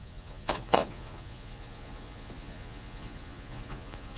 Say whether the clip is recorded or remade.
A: remade